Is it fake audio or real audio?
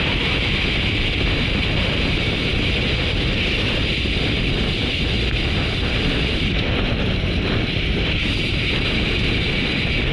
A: real